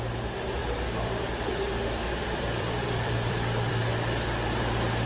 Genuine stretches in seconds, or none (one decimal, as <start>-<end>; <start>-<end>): 0.0-0.6; 3.7-5.1